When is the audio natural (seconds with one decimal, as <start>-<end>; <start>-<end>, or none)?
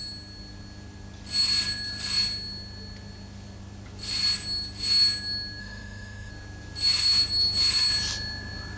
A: 0.0-5.6; 6.3-8.8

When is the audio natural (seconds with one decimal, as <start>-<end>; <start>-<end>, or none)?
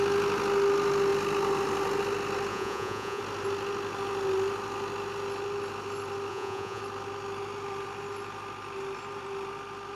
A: 0.0-2.5; 3.2-6.3; 6.8-10.0